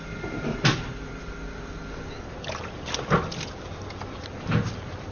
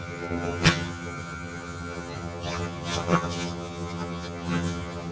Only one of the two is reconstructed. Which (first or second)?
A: second